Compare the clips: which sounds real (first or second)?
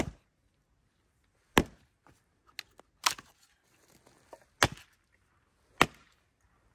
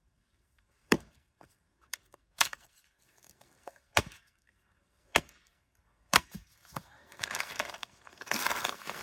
first